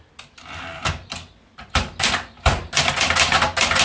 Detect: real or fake real